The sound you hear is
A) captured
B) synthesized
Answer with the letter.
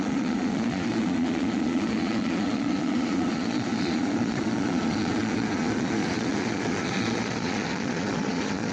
B